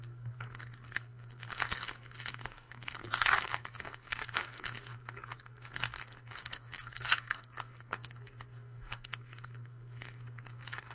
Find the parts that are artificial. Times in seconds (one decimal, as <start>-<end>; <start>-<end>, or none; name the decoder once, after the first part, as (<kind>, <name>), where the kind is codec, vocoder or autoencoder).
0.0-10.9 (codec, SNAC)